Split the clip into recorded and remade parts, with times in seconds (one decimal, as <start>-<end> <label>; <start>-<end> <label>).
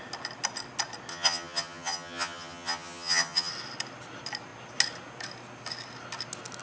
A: 0.0-1.1 recorded; 1.1-3.5 remade; 3.5-6.6 recorded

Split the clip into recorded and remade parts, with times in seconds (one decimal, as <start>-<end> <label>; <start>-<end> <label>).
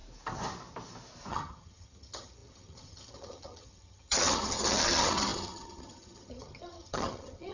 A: 0.0-1.3 recorded; 1.3-7.5 remade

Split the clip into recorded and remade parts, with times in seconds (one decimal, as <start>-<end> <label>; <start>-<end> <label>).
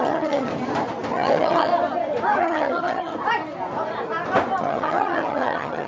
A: 0.0-0.5 remade; 0.5-1.1 recorded; 1.1-1.7 remade; 1.7-2.4 recorded; 2.4-3.1 remade; 3.1-4.6 recorded; 4.6-5.9 remade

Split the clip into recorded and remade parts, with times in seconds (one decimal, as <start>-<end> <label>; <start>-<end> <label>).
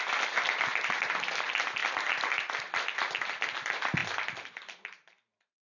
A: 0.0-5.7 recorded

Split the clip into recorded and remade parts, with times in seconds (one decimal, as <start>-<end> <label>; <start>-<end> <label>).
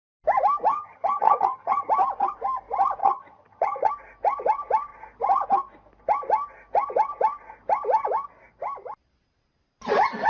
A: 0.0-0.7 recorded; 0.7-1.9 remade; 1.9-3.0 recorded; 3.0-3.9 remade; 3.9-10.3 recorded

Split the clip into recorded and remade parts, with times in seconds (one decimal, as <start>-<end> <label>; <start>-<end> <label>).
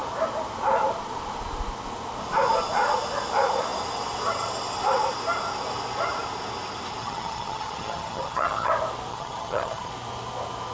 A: 0.0-7.0 recorded; 7.0-8.7 remade; 8.7-9.1 recorded; 9.1-9.9 remade; 9.9-10.7 recorded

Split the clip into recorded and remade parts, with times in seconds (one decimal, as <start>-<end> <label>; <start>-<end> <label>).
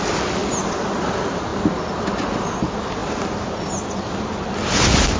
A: 0.0-5.2 recorded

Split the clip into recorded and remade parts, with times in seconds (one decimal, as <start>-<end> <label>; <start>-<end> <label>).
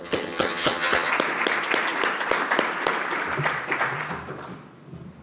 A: 0.0-1.1 remade; 1.1-5.2 recorded